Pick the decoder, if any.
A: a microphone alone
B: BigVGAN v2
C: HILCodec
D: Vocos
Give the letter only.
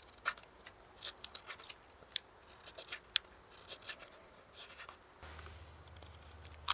A